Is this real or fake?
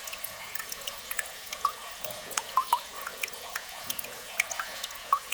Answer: fake